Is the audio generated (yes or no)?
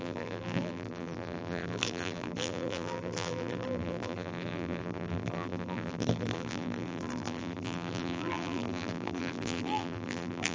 yes